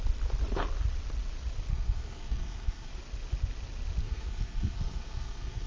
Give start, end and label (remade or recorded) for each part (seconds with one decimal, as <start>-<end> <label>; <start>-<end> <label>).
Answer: 0.0-1.7 recorded; 1.7-2.9 remade; 2.9-4.0 recorded; 4.0-5.7 remade